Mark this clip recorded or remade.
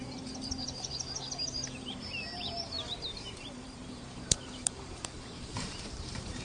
remade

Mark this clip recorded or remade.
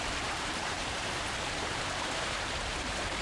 remade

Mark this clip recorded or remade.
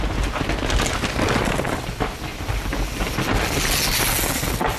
recorded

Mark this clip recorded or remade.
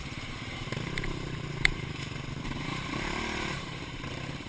remade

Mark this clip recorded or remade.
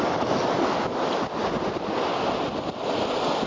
recorded